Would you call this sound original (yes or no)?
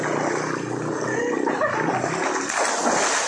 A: yes